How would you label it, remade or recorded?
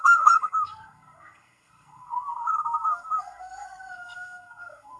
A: remade